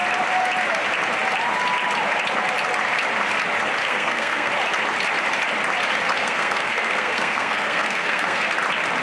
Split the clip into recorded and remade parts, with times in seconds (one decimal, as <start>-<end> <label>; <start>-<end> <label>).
0.0-3.8 recorded; 3.8-4.5 remade; 4.5-6.2 recorded; 6.2-8.5 remade; 8.5-9.0 recorded